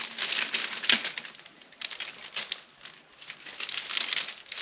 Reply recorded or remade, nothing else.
recorded